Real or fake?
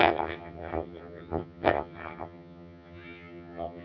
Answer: fake